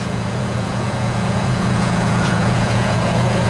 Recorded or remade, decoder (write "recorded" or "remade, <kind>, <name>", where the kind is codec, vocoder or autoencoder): remade, vocoder, Vocos